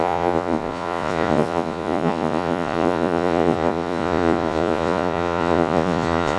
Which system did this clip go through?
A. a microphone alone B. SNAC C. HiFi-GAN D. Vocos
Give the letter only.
D